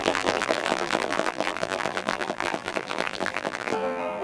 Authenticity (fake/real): fake